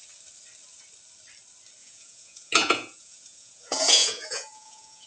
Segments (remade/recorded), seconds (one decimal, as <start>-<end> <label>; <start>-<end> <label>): 0.0-1.8 recorded; 1.8-5.1 remade